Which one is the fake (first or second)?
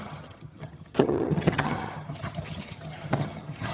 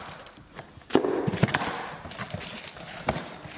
first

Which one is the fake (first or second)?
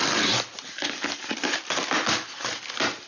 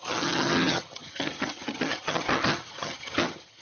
second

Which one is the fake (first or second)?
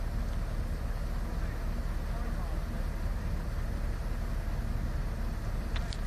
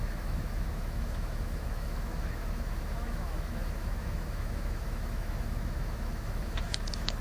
second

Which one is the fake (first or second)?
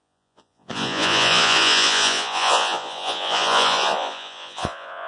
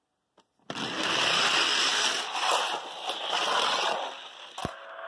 first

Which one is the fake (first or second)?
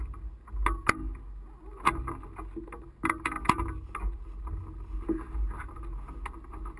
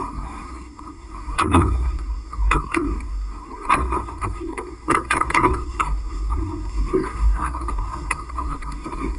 second